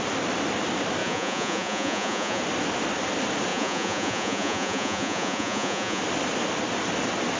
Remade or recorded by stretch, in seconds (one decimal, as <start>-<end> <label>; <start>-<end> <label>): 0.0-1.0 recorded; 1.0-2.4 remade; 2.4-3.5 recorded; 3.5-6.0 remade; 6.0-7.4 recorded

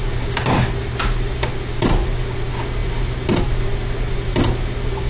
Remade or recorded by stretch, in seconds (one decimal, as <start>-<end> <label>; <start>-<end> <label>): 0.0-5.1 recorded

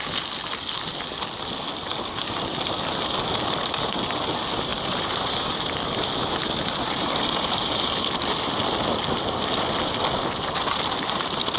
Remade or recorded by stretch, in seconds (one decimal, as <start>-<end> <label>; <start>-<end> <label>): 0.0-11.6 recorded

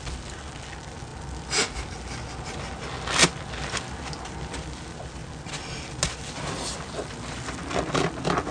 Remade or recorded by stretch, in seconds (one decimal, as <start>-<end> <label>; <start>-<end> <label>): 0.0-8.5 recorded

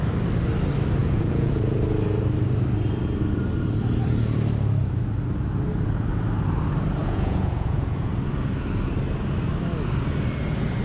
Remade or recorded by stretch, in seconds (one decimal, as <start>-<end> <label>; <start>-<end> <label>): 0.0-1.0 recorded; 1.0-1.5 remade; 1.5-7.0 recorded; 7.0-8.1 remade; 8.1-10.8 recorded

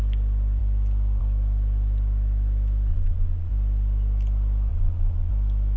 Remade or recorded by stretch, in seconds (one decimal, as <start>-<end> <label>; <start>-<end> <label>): 0.0-2.9 recorded; 2.9-3.5 remade; 3.5-4.7 recorded; 4.7-5.3 remade; 5.3-5.8 recorded